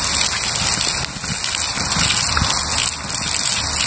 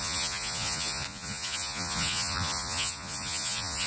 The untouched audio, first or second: first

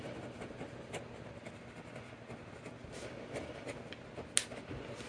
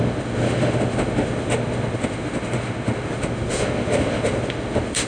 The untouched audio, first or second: first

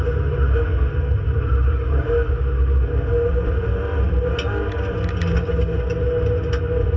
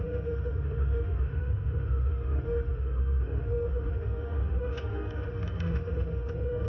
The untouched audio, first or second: first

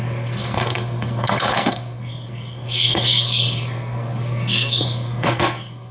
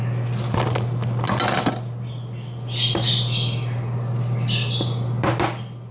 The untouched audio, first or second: second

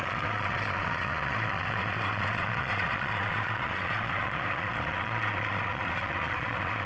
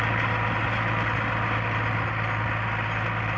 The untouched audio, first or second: second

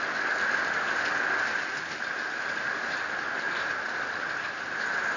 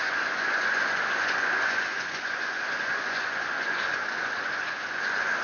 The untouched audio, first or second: first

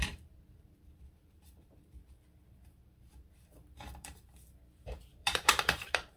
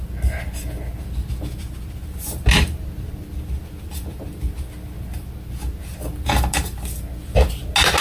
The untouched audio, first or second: second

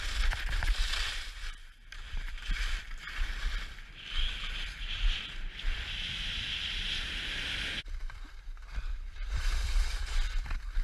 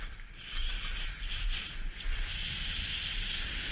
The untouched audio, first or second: second